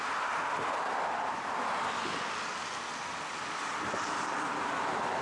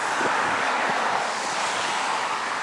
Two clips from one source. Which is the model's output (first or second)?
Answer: second